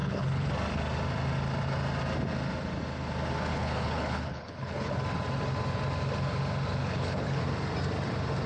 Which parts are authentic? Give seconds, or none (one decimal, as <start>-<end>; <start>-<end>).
0.5-3.5; 4.9-6.8; 7.4-8.5